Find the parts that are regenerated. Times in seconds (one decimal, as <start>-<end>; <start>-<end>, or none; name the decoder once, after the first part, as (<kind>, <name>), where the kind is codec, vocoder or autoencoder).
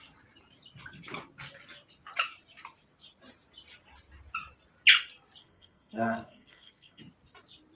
5.4-7.0 (codec, SNAC)